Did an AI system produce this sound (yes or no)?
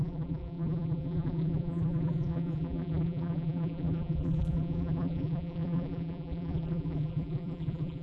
yes